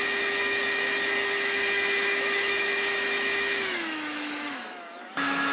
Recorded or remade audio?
remade